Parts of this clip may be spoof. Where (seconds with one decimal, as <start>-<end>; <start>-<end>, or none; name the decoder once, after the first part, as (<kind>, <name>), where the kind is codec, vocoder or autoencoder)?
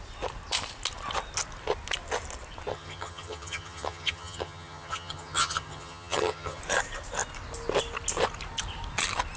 2.7-6.6 (vocoder, HiFi-GAN)